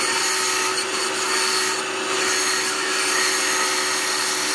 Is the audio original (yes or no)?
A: yes